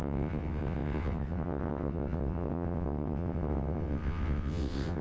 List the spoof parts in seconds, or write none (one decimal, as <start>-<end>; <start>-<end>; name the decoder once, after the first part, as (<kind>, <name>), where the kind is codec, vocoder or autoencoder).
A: 0.0-5.0 (vocoder, WaveNeXt)